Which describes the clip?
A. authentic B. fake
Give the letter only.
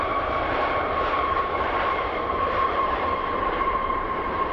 B